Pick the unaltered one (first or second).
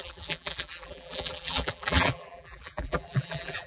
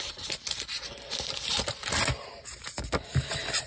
second